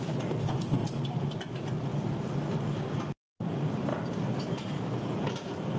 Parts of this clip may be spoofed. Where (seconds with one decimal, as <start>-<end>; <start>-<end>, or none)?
3.9-4.8